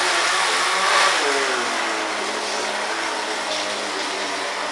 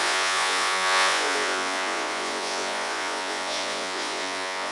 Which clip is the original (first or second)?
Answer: first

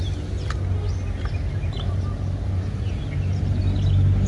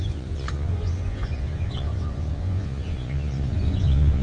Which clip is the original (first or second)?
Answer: first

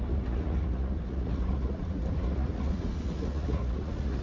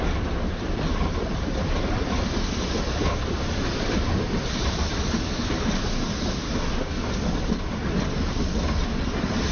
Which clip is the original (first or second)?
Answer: second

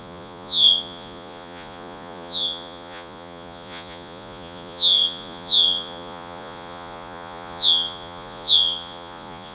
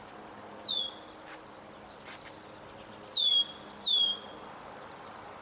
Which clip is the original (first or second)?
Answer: second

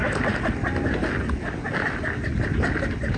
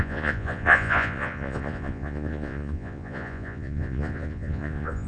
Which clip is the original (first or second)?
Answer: first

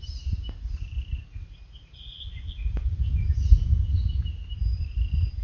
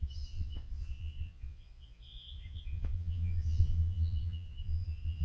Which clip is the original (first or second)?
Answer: first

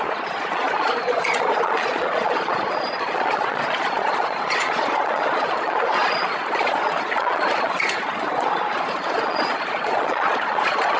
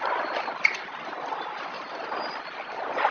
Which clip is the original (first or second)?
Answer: second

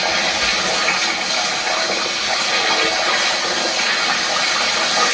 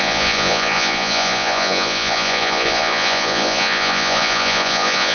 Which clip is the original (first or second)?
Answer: first